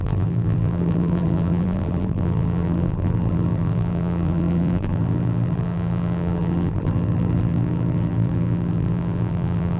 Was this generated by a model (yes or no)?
yes